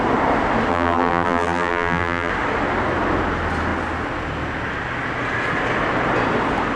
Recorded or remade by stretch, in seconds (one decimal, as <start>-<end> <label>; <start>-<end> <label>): 0.0-0.7 recorded; 0.7-2.3 remade; 2.3-6.8 recorded